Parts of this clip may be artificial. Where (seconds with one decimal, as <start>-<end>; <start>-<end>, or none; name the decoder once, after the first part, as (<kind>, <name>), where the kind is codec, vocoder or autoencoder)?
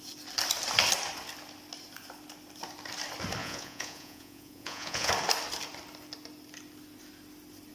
3.4-5.1 (vocoder, Vocos)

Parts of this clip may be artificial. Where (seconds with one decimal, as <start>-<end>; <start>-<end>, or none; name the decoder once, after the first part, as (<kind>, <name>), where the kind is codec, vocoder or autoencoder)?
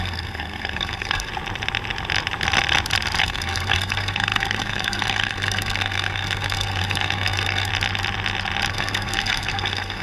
0.0-1.3 (codec, SNAC); 3.2-7.7; 8.7-10.0